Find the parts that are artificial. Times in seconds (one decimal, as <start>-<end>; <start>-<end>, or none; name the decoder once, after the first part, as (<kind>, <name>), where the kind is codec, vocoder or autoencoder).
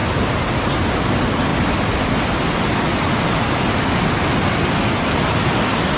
none